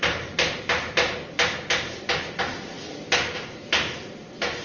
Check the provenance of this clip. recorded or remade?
recorded